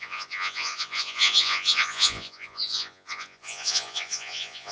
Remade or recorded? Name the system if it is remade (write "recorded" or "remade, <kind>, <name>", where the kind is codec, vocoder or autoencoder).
remade, vocoder, Vocos